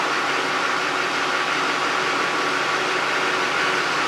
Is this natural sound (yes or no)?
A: yes